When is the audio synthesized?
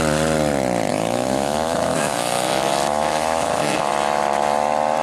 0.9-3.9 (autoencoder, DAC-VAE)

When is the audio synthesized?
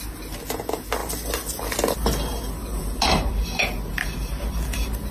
none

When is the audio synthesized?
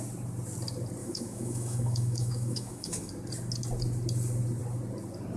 1.0-3.1 (autoencoder, DAC-VAE)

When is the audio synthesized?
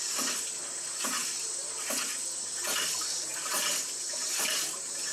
none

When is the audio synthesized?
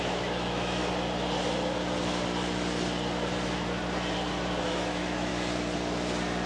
0.0-0.8 (autoencoder, DAC-VAE); 4.6-5.3